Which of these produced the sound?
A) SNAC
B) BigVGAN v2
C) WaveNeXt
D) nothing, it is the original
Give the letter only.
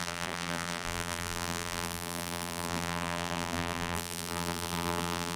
B